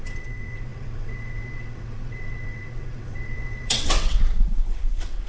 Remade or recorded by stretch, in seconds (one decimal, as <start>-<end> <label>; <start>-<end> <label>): 0.0-5.3 remade